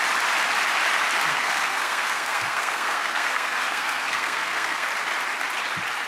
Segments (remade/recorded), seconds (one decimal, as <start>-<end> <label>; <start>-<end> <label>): 0.0-1.3 recorded; 1.3-4.9 remade; 4.9-6.1 recorded